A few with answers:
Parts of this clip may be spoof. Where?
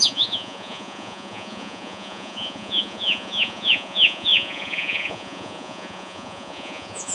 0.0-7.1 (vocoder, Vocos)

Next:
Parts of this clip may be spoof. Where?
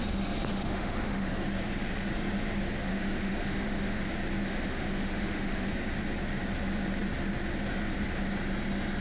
0.5-1.3 (autoencoder, DAC-VAE); 2.9-4.0; 4.4-5.7